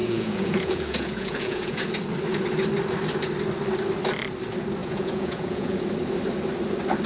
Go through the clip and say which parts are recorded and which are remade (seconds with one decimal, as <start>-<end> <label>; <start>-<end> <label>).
0.0-1.8 remade; 1.8-4.8 recorded; 4.8-5.8 remade; 5.8-7.1 recorded